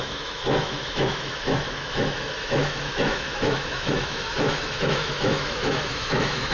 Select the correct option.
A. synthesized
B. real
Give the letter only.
A